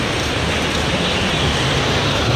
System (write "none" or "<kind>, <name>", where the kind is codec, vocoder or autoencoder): none